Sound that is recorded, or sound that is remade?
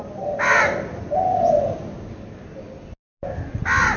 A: recorded